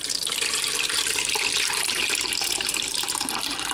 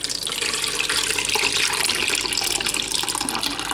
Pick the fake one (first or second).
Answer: first